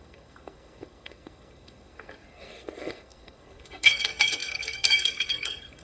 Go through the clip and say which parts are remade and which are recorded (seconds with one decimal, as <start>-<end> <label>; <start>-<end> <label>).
0.0-5.8 remade